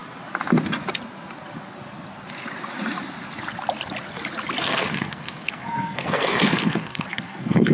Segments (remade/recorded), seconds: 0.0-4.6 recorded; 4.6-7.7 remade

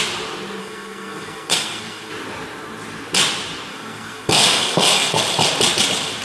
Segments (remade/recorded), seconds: 0.0-0.6 recorded; 0.6-2.1 remade; 2.1-3.7 recorded; 3.7-5.2 remade; 5.2-6.2 recorded

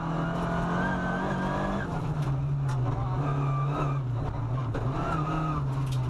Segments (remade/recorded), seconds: 0.0-6.1 recorded

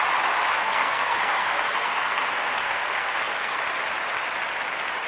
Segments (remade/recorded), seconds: 0.0-0.5 recorded; 0.5-3.6 remade; 3.6-5.1 recorded

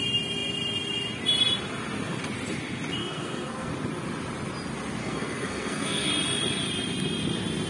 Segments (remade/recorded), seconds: 0.0-3.0 recorded; 3.0-3.7 remade; 3.7-5.0 recorded; 5.0-6.1 remade; 6.1-7.7 recorded

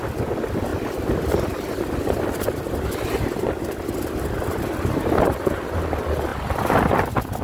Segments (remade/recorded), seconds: 0.0-7.4 recorded